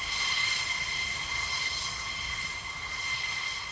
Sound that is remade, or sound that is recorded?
recorded